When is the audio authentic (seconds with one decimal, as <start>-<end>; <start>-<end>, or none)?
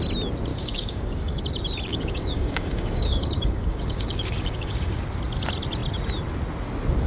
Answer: 0.0-0.5; 1.4-1.9; 5.0-7.1